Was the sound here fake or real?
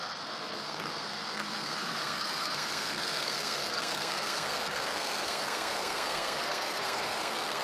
fake